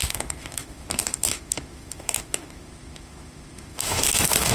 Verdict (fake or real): fake